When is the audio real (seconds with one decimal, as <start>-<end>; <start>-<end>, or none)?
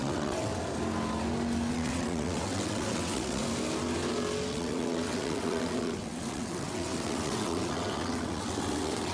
0.5-1.7; 3.4-4.5